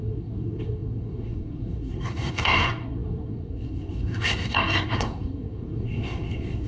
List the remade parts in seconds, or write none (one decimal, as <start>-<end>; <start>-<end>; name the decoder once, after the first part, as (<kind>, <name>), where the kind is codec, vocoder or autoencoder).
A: 0.0-6.7 (codec, SNAC)